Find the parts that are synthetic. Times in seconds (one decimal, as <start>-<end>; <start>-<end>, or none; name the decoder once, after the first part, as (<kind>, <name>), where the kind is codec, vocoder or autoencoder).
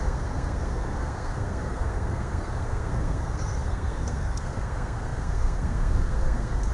0.0-6.7 (codec, SNAC)